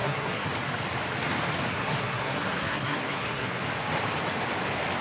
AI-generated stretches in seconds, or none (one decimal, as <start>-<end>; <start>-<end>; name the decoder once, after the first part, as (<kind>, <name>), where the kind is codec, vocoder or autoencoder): 0.0-0.5 (codec, SNAC); 1.7-3.6